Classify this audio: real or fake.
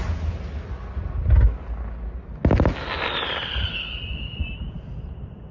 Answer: real